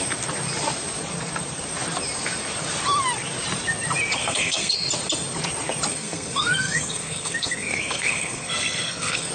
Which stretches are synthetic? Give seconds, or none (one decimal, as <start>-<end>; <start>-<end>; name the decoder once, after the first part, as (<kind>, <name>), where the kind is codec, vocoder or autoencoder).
4.2-4.7 (codec, SNAC); 5.9-9.3

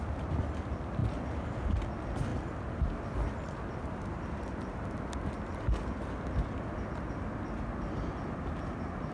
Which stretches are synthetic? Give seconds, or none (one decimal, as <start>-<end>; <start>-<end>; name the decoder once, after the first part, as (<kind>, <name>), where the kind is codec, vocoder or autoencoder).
none

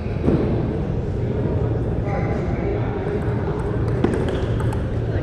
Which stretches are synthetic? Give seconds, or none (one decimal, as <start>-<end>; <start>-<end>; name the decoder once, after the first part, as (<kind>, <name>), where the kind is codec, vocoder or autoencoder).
0.0-1.1 (vocoder, BigVGAN v2); 2.7-4.8

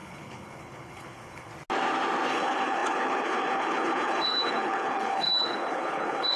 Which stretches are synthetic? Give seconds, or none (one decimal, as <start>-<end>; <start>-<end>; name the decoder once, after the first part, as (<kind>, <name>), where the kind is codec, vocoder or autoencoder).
0.0-1.5 (codec, HILCodec); 2.3-6.4

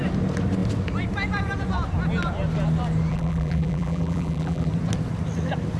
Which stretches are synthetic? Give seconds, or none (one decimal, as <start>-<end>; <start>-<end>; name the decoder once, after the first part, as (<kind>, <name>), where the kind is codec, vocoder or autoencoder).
3.1-4.7 (vocoder, BigVGAN v2)